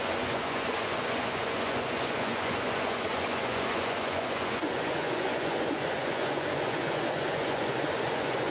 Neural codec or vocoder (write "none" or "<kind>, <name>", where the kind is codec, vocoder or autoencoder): vocoder, Vocos